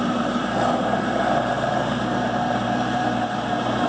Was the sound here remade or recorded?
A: remade